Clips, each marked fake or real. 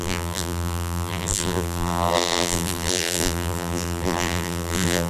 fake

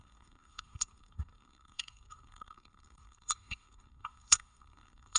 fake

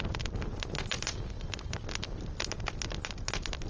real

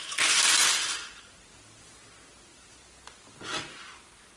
real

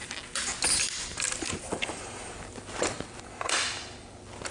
real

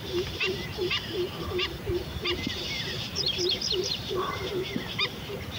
fake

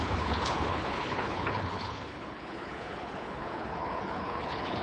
fake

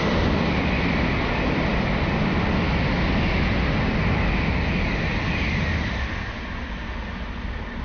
real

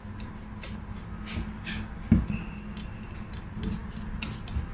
real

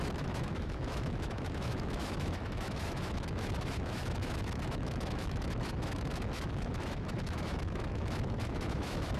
fake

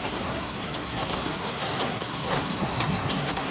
fake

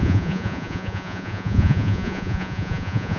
fake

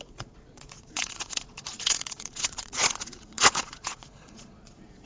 fake